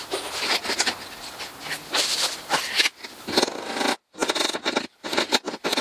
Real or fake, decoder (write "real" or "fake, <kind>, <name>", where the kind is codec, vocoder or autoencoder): real